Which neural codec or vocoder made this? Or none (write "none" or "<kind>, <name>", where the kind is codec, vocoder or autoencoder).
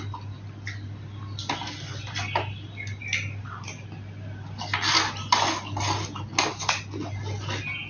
none